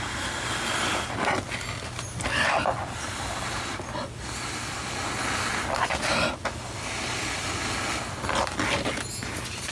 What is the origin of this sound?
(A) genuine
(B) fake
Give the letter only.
A